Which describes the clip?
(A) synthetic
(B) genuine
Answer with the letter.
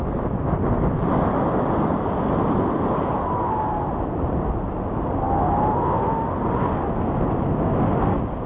B